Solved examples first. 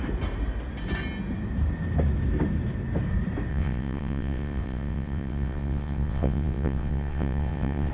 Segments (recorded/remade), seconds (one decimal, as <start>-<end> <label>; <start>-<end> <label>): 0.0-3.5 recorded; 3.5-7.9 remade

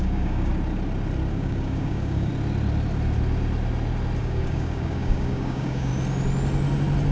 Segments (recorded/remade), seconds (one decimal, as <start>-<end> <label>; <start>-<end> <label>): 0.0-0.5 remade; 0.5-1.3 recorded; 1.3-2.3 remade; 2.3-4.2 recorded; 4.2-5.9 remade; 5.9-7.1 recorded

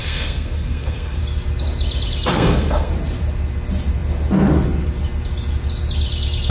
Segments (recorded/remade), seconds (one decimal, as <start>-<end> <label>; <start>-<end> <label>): 0.0-1.2 remade; 1.2-2.3 recorded; 2.3-2.9 remade; 2.9-6.5 recorded

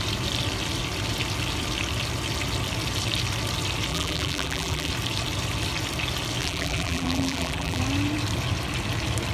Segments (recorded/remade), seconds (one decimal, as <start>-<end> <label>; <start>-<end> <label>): 0.0-3.9 recorded; 3.9-4.9 remade; 4.9-6.4 recorded; 6.4-7.8 remade; 7.8-9.3 recorded

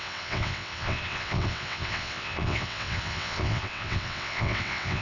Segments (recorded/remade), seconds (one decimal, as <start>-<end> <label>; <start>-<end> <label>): 0.0-5.0 remade

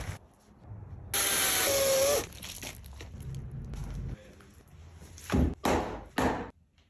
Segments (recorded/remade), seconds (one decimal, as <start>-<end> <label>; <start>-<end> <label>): 0.0-6.9 recorded

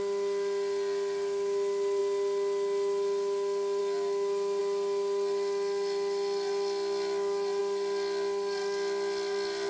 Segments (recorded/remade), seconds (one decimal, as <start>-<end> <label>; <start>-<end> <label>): 0.0-9.7 recorded

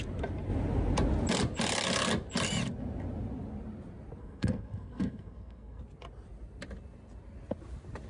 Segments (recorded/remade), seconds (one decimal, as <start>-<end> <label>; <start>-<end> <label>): 0.0-4.2 recorded; 4.2-5.8 remade; 5.8-8.1 recorded